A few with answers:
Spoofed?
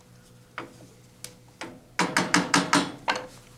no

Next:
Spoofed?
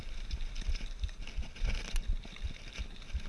no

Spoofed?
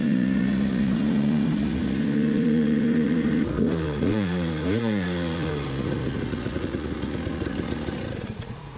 yes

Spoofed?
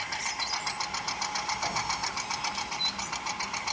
no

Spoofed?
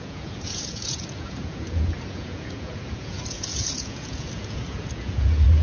yes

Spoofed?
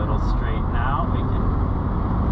no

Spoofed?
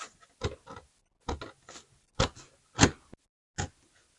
no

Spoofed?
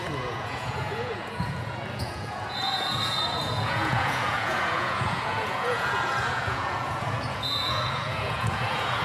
yes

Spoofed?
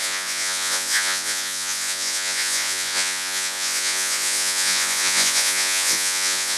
yes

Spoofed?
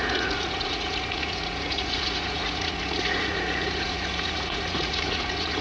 yes